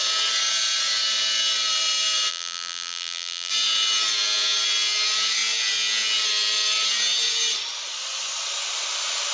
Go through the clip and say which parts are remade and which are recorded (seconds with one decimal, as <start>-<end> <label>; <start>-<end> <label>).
0.0-2.3 recorded; 2.3-3.5 remade; 3.5-9.3 recorded